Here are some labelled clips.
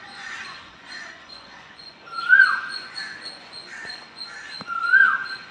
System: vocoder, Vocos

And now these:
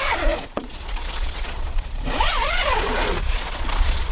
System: vocoder, Vocos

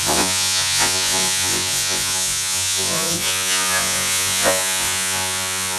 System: vocoder, Vocos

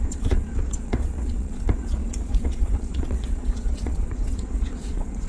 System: vocoder, Vocos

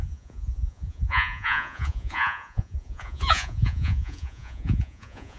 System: vocoder, Vocos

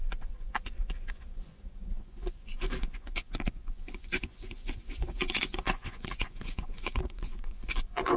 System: vocoder, Vocos